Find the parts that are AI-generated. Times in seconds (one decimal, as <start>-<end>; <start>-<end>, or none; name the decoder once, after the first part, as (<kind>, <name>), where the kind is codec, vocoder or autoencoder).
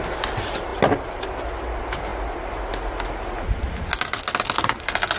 none